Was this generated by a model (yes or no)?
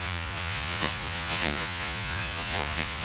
yes